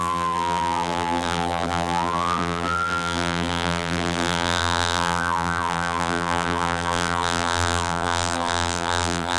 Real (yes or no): no